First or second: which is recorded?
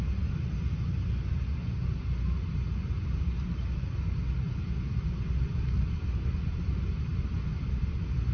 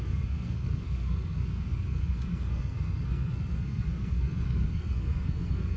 first